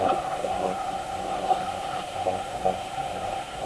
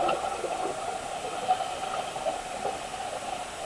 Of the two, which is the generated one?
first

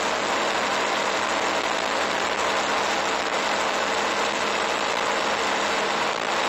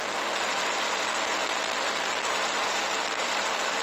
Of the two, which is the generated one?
second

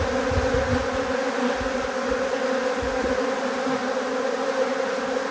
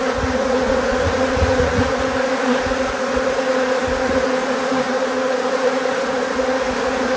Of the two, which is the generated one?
second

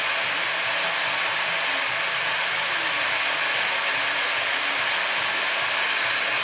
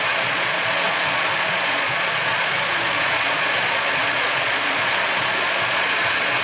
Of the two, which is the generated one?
second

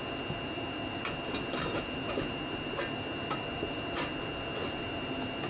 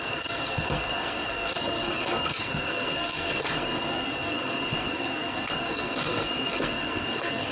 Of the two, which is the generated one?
second